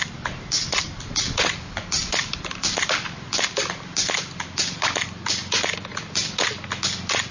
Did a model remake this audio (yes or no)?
no